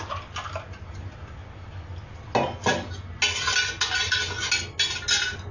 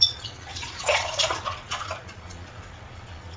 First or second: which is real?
first